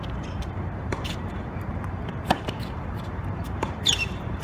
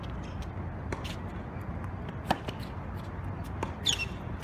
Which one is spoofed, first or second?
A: first